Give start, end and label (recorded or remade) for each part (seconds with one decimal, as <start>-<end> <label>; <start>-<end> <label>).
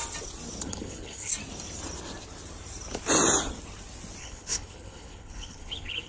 0.0-0.6 recorded; 0.6-1.3 remade; 1.3-4.2 recorded; 4.2-6.1 remade